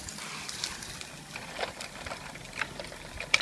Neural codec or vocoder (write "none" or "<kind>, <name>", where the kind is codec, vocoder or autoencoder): vocoder, BigVGAN v2